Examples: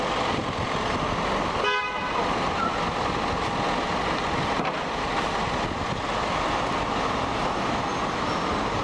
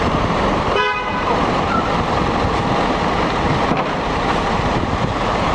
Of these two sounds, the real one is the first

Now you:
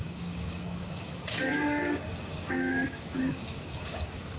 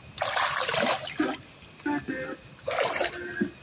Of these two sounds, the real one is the second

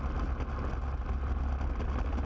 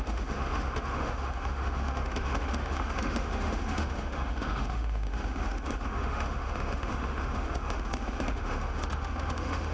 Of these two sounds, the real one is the first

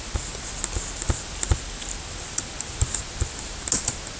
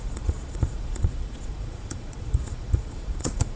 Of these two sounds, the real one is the first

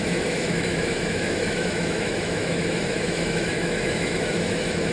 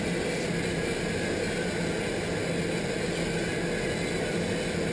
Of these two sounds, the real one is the second